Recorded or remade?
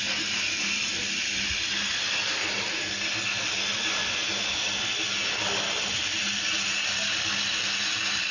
recorded